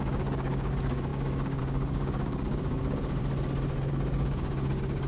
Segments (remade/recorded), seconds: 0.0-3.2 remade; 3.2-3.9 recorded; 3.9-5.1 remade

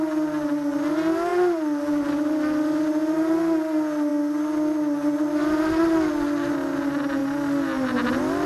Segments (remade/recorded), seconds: 0.0-8.5 recorded

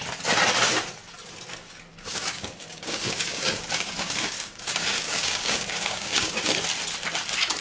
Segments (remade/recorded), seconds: 0.0-1.9 recorded; 1.9-6.5 remade; 6.5-7.6 recorded

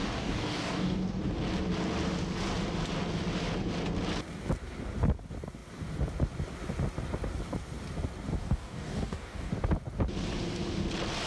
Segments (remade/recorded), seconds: 0.0-1.2 remade; 1.2-8.4 recorded; 8.4-9.5 remade; 9.5-11.3 recorded

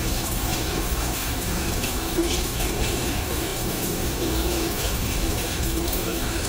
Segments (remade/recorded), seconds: 0.0-6.5 remade

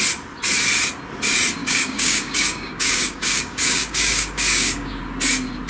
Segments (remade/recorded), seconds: 0.0-1.6 recorded; 1.6-5.0 remade; 5.0-5.7 recorded